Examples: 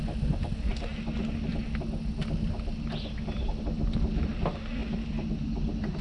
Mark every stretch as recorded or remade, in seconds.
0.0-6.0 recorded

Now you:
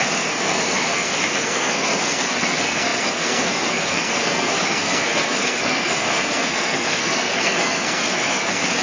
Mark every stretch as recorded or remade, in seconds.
0.0-8.8 remade

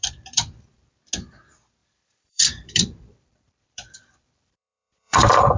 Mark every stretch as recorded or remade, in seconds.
0.0-1.0 remade; 1.0-1.8 recorded; 1.8-5.6 remade